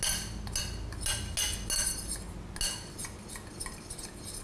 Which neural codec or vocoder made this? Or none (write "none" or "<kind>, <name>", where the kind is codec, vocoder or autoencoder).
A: none